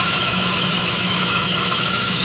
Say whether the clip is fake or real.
fake